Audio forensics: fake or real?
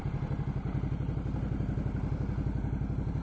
real